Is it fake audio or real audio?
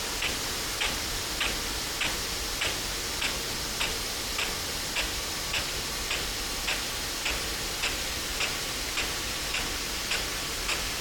real